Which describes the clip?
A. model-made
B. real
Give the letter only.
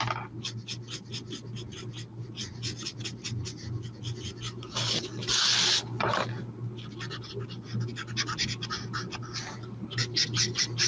B